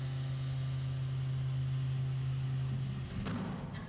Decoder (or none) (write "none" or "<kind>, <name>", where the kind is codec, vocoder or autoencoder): none